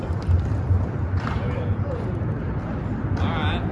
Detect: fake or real real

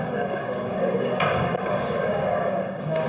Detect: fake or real fake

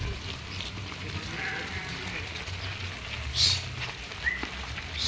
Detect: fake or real real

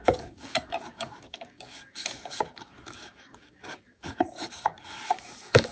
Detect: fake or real fake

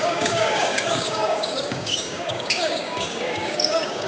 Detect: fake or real fake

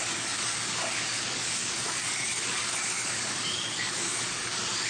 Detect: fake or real fake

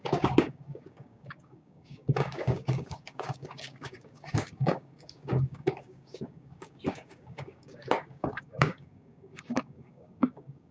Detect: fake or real fake